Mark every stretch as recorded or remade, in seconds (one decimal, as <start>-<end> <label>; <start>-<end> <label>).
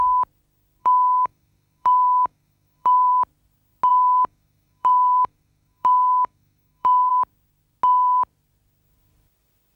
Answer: 0.0-0.8 recorded; 0.8-3.1 remade; 3.1-3.9 recorded; 3.9-7.1 remade; 7.1-9.8 recorded